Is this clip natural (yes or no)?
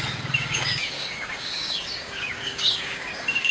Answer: no